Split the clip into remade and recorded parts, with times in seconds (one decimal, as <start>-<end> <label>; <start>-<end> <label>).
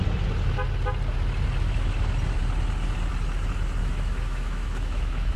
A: 0.0-3.8 recorded; 3.8-5.4 remade